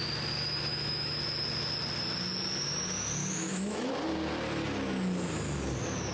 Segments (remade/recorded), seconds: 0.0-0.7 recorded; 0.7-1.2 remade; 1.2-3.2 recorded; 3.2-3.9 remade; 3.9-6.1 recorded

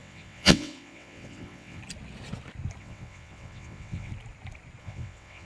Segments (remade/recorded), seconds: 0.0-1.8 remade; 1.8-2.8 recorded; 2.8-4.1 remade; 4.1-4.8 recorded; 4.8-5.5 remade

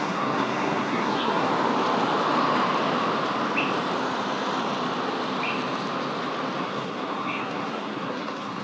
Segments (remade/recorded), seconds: 0.0-1.5 remade; 1.5-6.6 recorded; 6.6-8.6 remade

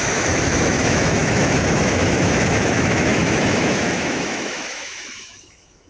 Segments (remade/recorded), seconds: 0.0-5.9 remade

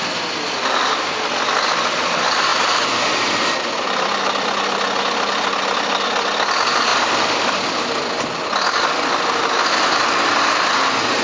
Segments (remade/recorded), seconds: 0.0-11.2 recorded